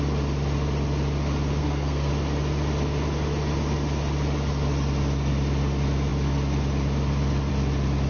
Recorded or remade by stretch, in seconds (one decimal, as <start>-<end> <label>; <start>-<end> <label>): 0.0-1.6 recorded; 1.6-2.1 remade; 2.1-8.1 recorded